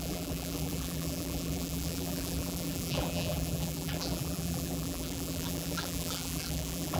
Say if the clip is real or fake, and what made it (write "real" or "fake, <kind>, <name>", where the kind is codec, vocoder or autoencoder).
fake, vocoder, BigVGAN v2